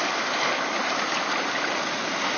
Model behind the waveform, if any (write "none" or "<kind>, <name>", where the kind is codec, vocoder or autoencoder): none